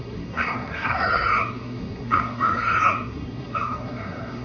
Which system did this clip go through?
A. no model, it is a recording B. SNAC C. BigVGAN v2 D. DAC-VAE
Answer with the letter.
B